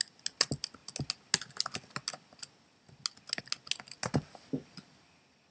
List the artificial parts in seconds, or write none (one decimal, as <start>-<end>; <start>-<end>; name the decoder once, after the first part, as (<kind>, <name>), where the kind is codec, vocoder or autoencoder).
none